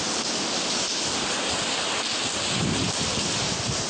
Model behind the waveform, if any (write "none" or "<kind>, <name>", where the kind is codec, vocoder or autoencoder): none